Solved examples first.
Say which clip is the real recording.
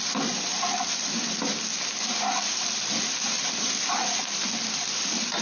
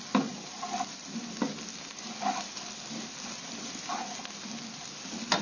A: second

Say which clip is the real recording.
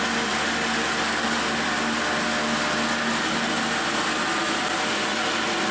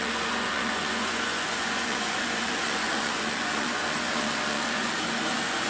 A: first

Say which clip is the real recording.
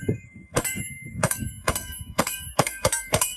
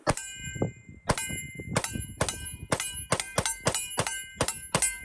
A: second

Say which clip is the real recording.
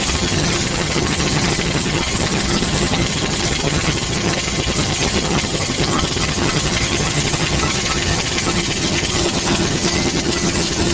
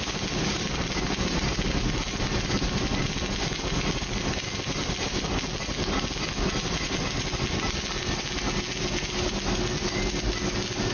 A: second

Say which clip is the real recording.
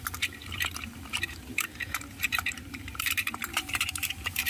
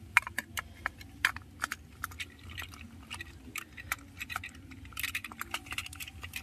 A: second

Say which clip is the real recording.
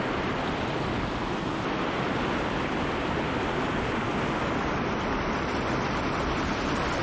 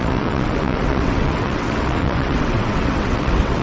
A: first